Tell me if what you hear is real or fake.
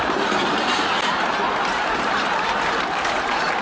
fake